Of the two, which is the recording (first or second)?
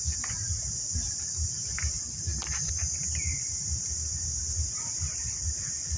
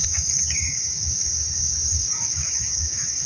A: first